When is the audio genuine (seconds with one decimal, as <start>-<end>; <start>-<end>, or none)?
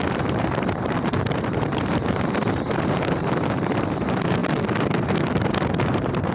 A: none